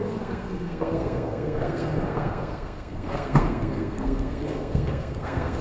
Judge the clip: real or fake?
fake